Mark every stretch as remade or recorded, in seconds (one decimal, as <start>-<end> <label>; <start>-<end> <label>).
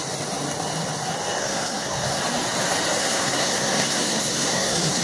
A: 0.0-1.4 recorded; 1.4-2.2 remade; 2.2-3.0 recorded; 3.0-5.0 remade